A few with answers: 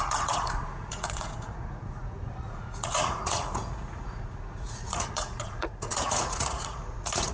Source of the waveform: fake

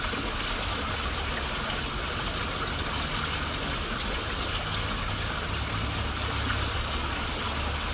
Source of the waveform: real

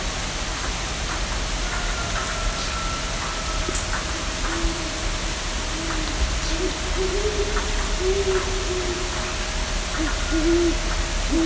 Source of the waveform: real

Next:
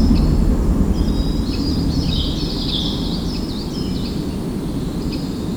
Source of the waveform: real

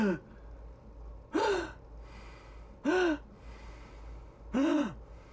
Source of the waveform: real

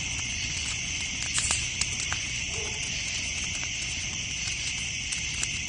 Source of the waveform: fake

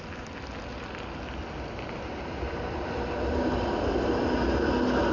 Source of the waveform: real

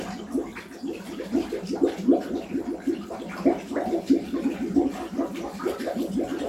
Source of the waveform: real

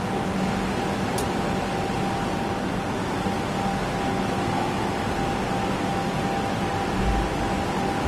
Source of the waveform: real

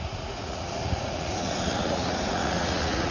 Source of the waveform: fake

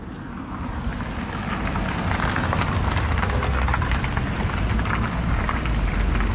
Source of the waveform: real